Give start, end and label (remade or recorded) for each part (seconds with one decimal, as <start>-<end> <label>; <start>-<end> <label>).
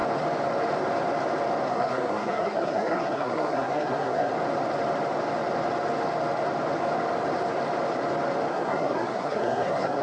0.0-1.7 recorded; 1.7-4.3 remade; 4.3-8.5 recorded; 8.5-10.0 remade